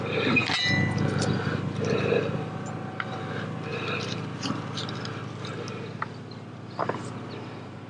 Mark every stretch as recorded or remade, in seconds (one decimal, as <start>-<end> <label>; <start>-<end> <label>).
0.0-7.9 recorded